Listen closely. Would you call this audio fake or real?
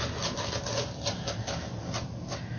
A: real